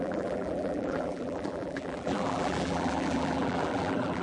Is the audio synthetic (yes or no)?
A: yes